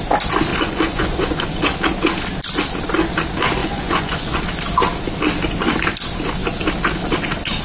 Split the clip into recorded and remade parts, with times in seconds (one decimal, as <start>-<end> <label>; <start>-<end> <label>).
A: 0.0-0.5 recorded; 0.5-1.4 remade; 1.4-3.6 recorded; 3.6-4.4 remade; 4.4-7.6 recorded